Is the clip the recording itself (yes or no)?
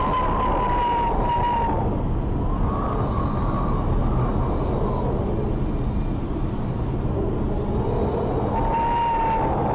yes